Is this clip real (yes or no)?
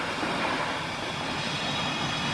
yes